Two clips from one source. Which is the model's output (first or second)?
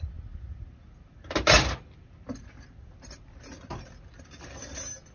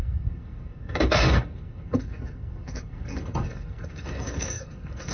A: second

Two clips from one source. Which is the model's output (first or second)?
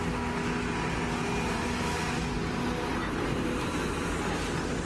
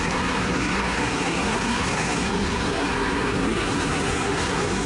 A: second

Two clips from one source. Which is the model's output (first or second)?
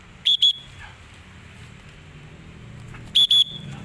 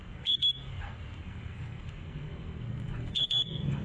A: second